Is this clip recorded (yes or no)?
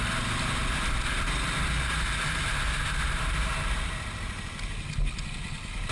yes